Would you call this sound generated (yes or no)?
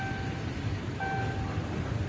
no